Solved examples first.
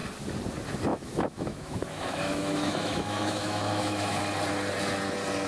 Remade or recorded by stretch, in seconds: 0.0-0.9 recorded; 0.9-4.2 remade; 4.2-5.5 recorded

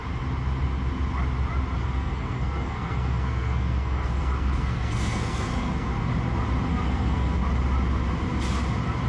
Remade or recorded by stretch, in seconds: 0.0-1.8 recorded; 1.8-6.1 remade; 6.1-6.7 recorded; 6.7-7.4 remade; 7.4-9.1 recorded

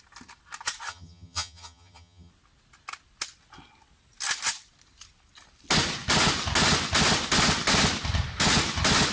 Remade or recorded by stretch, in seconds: 0.0-0.9 recorded; 0.9-2.3 remade; 2.3-9.1 recorded

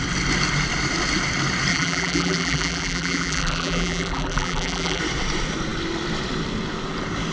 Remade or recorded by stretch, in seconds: 0.0-1.7 recorded; 1.7-5.0 remade; 5.0-7.3 recorded

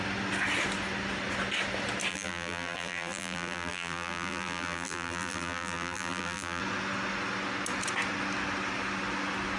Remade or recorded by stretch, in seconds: 0.0-2.1 recorded; 2.1-6.6 remade; 6.6-9.6 recorded

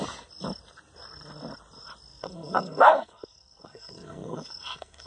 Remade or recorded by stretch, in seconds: 0.0-2.1 recorded; 2.1-5.1 remade

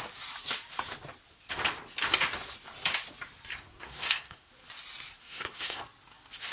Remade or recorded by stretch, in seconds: 0.0-3.5 recorded; 3.5-4.5 remade; 4.5-5.2 recorded; 5.2-5.8 remade; 5.8-6.5 recorded

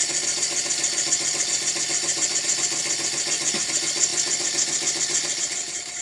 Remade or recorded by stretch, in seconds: 0.0-6.0 recorded